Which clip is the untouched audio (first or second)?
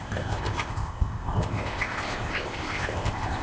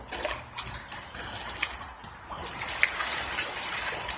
second